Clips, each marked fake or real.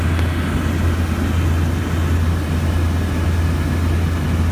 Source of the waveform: real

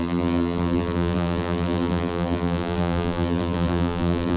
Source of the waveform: fake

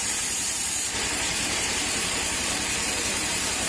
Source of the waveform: fake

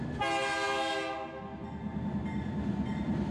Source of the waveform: real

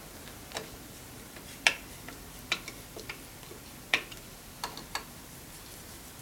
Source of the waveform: real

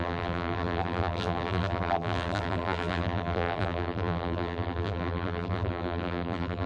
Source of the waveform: fake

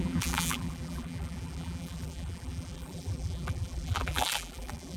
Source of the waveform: fake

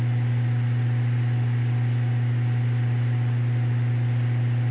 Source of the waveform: real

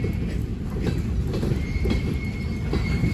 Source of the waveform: fake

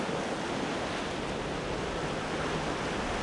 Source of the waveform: real